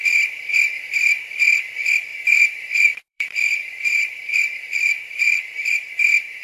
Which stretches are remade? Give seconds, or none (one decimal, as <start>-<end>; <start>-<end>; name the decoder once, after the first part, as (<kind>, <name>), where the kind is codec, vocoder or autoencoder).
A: 2.1-5.9 (vocoder, BigVGAN v2)